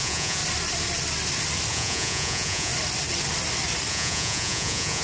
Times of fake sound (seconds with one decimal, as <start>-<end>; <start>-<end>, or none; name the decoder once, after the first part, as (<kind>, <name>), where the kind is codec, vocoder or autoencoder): 0.0-0.4 (vocoder, Vocos); 1.7-2.7; 3.9-5.0